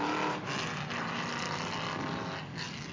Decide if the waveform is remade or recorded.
recorded